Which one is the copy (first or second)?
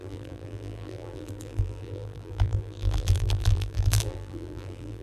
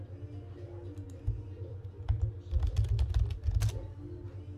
first